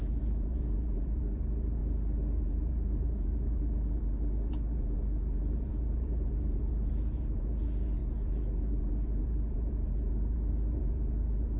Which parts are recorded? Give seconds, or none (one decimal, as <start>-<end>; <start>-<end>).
1.8-2.4

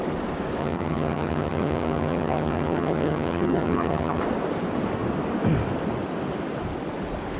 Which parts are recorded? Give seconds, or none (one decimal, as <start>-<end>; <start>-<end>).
0.0-0.6; 4.2-7.4